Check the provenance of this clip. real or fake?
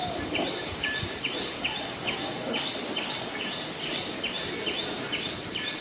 real